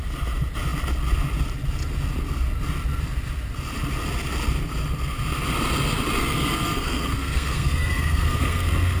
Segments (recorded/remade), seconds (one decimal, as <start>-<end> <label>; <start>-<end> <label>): 0.0-6.2 recorded; 6.2-9.0 remade